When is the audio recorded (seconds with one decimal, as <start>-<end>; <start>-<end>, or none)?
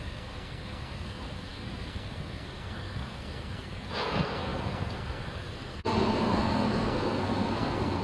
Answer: none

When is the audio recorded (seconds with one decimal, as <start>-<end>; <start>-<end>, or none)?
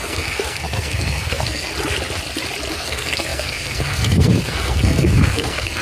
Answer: 1.7-2.7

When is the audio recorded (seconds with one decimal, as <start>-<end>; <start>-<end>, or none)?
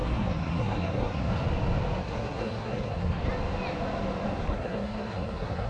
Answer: 1.3-2.0; 3.2-4.4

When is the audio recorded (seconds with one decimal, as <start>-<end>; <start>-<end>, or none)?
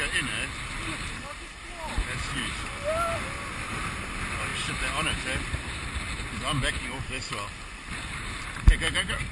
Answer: 0.0-9.3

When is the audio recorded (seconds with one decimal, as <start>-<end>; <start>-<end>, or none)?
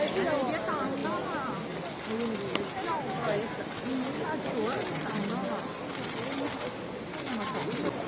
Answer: 0.0-8.1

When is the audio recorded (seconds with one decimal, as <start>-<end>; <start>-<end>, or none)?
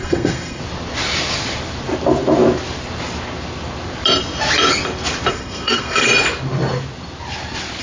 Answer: 0.6-5.3; 6.1-7.8